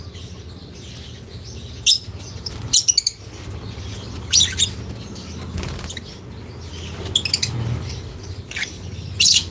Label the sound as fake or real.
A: real